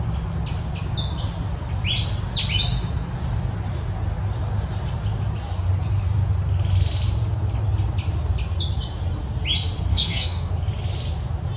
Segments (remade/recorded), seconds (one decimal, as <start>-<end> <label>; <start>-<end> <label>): 0.0-9.9 recorded; 9.9-10.5 remade; 10.5-11.6 recorded